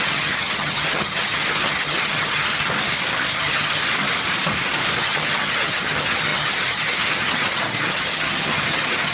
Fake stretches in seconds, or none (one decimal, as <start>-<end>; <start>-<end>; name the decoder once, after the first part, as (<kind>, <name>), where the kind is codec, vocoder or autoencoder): 0.0-2.5 (vocoder, HiFi-GAN); 3.3-3.8; 5.0-9.1